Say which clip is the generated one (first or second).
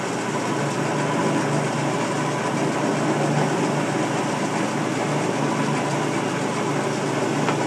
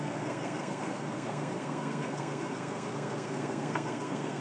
second